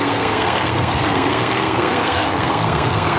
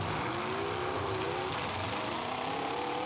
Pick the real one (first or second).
second